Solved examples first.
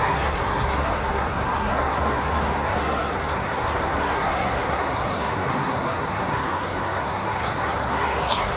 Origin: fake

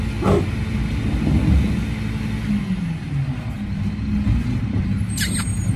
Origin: real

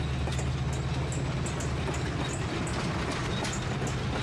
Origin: real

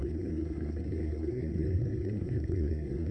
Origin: fake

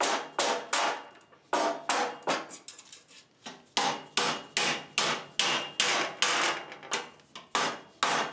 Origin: real